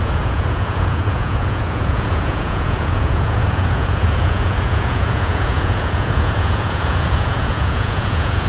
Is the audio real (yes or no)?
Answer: no